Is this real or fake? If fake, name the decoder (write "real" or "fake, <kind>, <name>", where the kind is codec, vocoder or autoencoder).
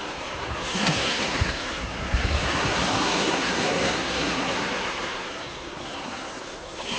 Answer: fake, codec, SNAC